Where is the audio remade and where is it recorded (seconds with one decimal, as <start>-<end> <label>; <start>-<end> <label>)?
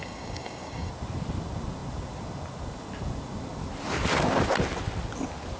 0.0-0.9 remade; 0.9-5.6 recorded